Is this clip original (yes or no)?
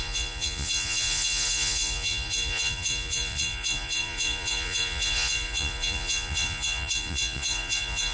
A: no